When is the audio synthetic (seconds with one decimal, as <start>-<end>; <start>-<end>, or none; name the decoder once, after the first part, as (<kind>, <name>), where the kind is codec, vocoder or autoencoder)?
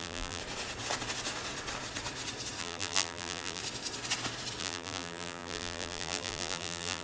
0.0-0.4 (vocoder, BigVGAN v2); 2.6-3.6; 4.6-7.0